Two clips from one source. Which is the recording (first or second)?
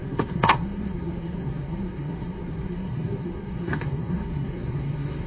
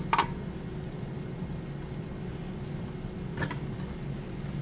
second